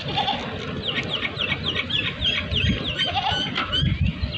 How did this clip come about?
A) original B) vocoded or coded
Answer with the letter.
A